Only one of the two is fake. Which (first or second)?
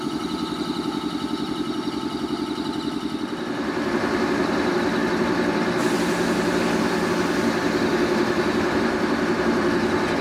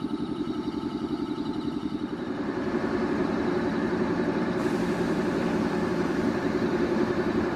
second